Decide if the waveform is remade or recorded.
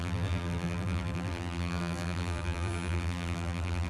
remade